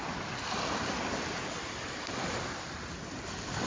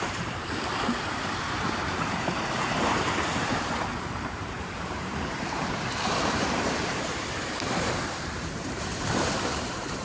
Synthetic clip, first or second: second